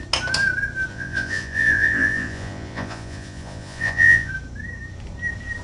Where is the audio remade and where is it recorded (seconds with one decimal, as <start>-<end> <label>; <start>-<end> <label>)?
0.0-0.9 recorded; 0.9-4.3 remade; 4.3-5.6 recorded